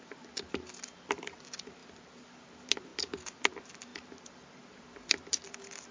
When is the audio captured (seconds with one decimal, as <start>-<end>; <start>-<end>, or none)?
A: 0.0-5.9